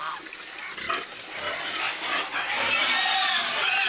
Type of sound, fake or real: real